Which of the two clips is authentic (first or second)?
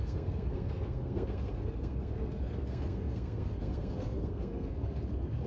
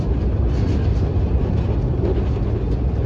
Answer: second